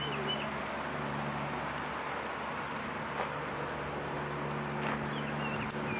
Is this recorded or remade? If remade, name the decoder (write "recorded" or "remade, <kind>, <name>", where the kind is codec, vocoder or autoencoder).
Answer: recorded